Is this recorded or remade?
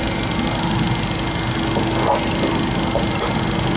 recorded